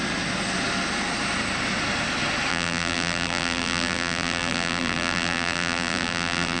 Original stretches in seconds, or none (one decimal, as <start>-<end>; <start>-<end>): 0.0-2.5

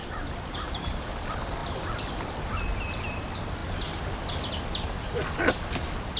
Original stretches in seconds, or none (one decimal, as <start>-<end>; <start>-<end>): 1.1-6.2

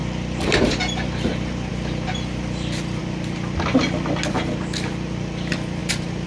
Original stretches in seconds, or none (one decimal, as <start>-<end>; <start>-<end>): 0.0-5.8

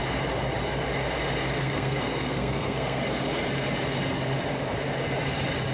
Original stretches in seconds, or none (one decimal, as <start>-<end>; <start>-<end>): 0.0-1.6; 3.0-5.7

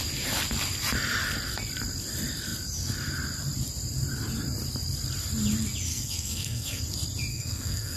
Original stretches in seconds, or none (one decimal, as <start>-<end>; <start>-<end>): 0.0-5.9; 6.8-7.3

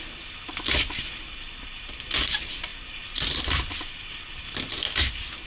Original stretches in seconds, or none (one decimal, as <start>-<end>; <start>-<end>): 0.0-5.5

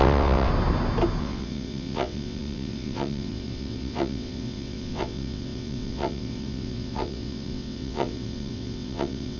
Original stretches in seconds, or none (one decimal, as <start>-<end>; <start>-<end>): 0.5-1.2